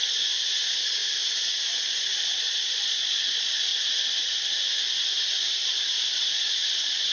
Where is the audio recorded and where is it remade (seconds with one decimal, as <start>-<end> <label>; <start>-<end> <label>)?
0.0-0.5 recorded; 0.5-1.0 remade; 1.0-1.7 recorded; 1.7-3.7 remade; 3.7-6.1 recorded; 6.1-7.1 remade